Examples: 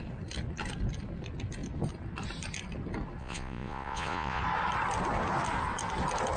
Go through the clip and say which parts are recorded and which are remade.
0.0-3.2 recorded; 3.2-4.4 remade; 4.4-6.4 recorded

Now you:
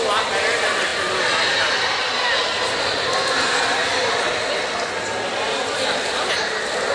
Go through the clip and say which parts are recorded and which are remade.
0.0-6.9 recorded

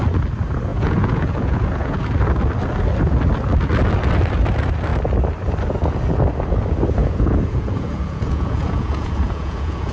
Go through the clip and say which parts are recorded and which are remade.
0.0-0.7 recorded; 0.7-2.0 remade; 2.0-7.0 recorded; 7.0-9.9 remade